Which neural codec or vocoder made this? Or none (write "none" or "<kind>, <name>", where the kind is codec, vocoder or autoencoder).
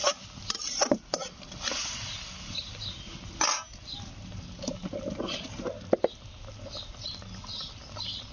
none